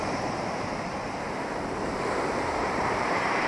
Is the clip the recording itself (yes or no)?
no